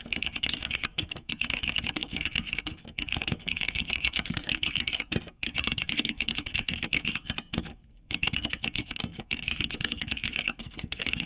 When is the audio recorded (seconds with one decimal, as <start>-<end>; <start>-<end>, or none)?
none